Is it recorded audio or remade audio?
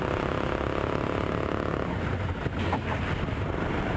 recorded